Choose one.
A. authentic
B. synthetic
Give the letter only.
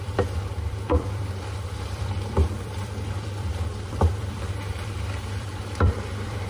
B